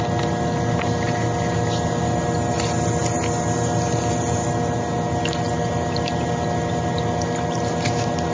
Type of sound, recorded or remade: recorded